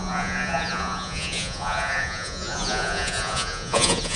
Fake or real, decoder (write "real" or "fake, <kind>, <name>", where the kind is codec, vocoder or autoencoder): fake, vocoder, Vocos